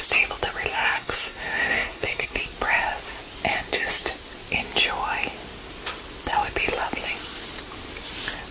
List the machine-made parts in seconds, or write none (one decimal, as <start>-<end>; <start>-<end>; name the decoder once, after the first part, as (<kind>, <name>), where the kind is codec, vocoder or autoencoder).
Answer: 0.7-2.4 (codec, SNAC)

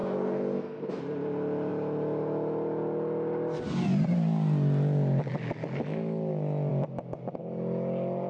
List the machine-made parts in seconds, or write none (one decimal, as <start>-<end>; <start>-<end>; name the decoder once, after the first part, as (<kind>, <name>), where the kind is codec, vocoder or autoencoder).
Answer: 0.0-1.0 (codec, SNAC)

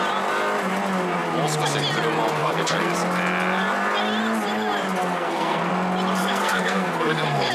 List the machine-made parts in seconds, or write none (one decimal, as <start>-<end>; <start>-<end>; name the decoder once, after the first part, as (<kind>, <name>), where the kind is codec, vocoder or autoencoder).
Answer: 2.4-2.9 (codec, SNAC); 5.0-5.7; 6.2-7.5

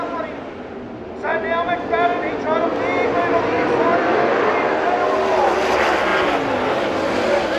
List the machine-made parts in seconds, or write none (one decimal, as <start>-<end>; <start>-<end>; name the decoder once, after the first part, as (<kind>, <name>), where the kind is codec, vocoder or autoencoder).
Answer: none

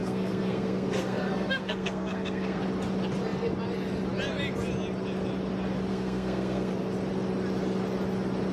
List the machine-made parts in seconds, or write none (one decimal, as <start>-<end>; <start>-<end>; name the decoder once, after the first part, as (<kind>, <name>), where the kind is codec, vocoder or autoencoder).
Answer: 0.0-2.6 (codec, SNAC); 5.9-6.7

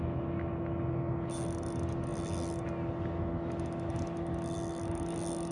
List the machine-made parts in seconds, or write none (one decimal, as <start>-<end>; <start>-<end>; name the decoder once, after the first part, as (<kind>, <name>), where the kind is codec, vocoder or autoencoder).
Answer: none

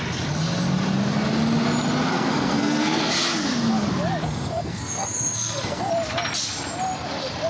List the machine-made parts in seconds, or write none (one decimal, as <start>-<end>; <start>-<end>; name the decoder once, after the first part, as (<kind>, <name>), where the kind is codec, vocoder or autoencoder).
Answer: 2.1-3.1 (codec, SNAC); 4.2-5.9